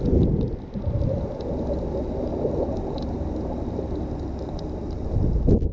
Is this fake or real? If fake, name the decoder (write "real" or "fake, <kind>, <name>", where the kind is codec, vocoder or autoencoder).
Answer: real